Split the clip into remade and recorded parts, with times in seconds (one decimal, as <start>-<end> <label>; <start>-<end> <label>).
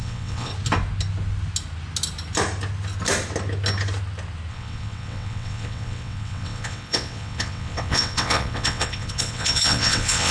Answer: 0.0-0.5 remade; 0.5-4.5 recorded; 4.5-10.3 remade